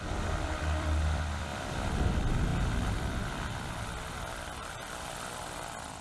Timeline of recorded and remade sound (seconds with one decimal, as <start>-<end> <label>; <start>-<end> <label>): 0.0-6.0 remade